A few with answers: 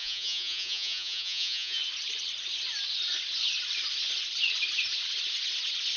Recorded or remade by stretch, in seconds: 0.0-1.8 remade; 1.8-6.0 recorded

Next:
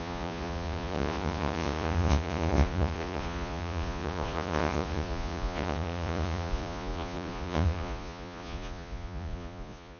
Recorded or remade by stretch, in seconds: 0.0-10.0 remade